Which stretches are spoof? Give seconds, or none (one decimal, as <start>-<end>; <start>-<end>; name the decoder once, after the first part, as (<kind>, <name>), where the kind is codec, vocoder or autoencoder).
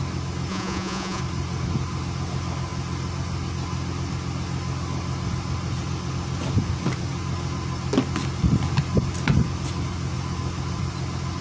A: 0.5-1.2 (vocoder, Vocos)